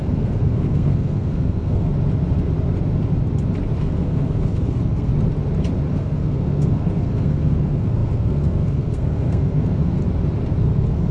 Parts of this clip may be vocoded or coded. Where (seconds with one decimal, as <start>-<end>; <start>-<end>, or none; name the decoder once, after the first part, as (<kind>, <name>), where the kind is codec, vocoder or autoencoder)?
0.0-1.9 (codec, SNAC); 3.8-5.1; 5.9-10.0; 10.6-11.1